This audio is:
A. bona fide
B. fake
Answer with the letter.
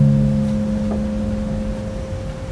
A